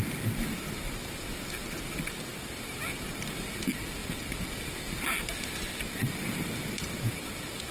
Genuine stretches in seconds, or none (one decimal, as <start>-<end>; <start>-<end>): 0.0-7.7